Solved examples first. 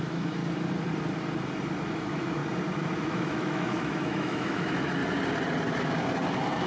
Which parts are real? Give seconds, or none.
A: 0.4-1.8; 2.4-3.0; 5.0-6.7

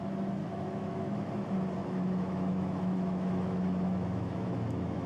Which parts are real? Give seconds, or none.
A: 0.0-0.4; 1.3-1.8

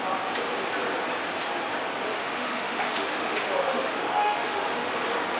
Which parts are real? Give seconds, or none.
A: 0.0-2.1; 4.9-5.4

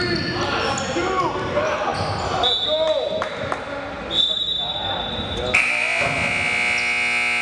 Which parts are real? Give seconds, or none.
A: 0.0-7.4

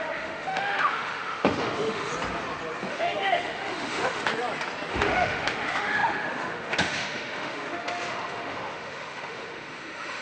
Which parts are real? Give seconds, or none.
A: 2.1-2.9; 4.3-4.9

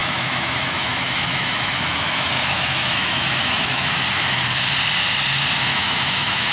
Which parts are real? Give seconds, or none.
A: 3.9-5.7